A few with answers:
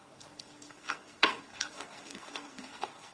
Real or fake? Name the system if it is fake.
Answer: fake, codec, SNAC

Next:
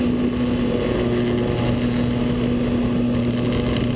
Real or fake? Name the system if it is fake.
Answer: real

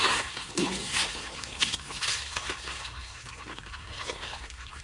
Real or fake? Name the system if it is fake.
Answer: fake, codec, SNAC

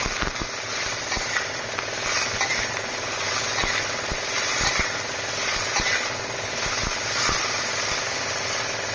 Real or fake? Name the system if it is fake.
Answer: real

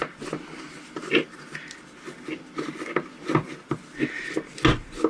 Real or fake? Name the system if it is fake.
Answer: real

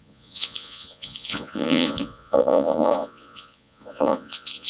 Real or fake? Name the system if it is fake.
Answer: fake, vocoder, Vocos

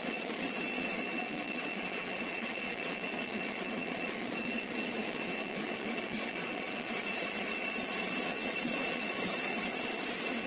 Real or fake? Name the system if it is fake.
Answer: fake, vocoder, Vocos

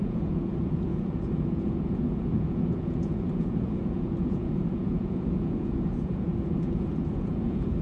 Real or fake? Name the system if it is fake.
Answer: fake, vocoder, Vocos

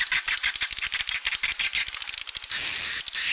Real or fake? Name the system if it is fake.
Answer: real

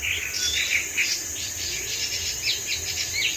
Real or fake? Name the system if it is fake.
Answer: real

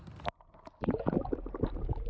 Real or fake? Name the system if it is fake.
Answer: real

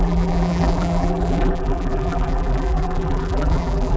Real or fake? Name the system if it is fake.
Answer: fake, vocoder, BigVGAN v2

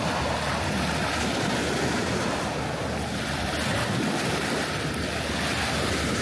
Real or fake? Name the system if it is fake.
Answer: real